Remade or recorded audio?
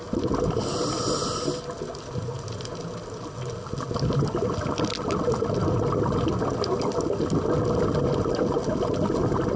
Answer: recorded